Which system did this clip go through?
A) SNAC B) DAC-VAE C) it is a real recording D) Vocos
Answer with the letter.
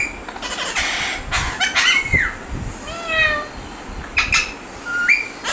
C